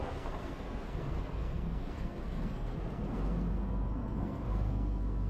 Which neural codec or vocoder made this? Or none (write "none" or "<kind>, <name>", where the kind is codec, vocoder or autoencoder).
codec, SNAC